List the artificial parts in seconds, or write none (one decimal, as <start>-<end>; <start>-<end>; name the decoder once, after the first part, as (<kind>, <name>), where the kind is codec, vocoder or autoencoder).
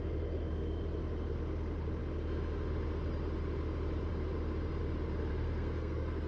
5.3-6.3 (codec, SNAC)